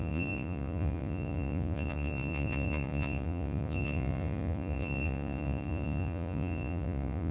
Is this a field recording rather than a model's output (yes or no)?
no